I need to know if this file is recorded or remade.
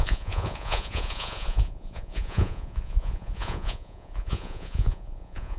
remade